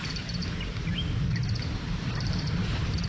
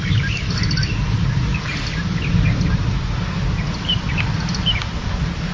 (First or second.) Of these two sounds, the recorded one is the second